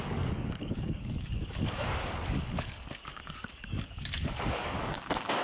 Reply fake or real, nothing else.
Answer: fake